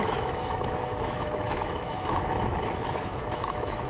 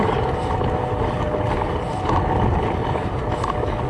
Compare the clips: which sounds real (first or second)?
second